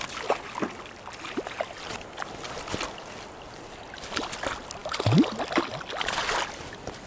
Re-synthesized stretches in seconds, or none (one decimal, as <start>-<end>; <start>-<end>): none